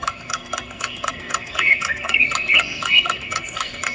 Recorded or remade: remade